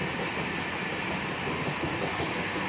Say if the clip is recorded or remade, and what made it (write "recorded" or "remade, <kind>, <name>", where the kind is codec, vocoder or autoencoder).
recorded